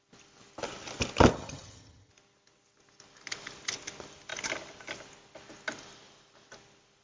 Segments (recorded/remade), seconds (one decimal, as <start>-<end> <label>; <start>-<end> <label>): 0.0-1.3 recorded; 1.3-2.1 remade; 2.1-7.0 recorded